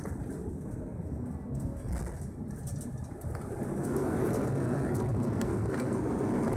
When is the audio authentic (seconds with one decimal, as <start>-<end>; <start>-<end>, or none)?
0.0-0.5; 1.9-3.7